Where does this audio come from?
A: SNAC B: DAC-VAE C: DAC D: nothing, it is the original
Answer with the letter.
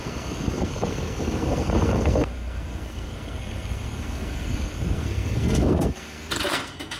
A